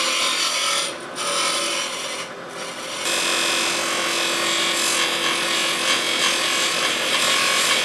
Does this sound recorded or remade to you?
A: recorded